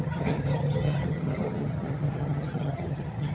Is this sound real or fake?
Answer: fake